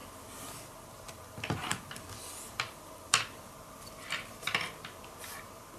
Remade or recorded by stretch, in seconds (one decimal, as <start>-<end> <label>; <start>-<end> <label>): 0.0-3.5 remade; 3.5-5.8 recorded